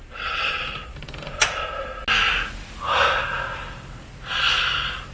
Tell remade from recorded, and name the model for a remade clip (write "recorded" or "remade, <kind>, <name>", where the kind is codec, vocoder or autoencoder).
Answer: recorded